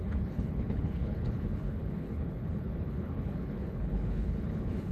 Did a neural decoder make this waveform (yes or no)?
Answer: yes